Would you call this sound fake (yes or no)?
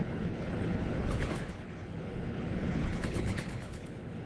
yes